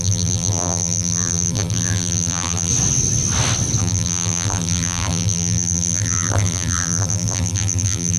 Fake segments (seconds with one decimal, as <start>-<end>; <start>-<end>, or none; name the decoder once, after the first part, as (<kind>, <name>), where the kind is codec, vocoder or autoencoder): 0.0-2.7 (vocoder, BigVGAN v2); 3.8-8.2